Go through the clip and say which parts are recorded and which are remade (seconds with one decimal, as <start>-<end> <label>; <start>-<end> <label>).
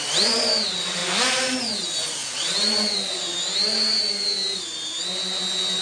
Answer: 0.0-5.8 recorded